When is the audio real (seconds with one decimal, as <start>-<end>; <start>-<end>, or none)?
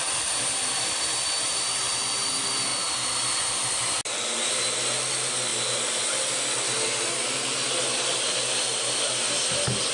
0.0-9.9